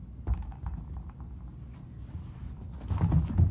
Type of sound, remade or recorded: recorded